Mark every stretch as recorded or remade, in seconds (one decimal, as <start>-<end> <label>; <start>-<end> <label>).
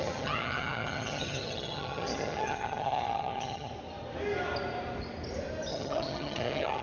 0.0-3.7 remade; 3.7-5.7 recorded; 5.7-6.8 remade